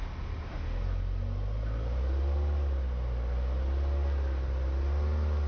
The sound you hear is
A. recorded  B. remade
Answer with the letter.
A